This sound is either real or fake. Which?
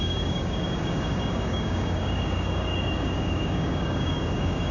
fake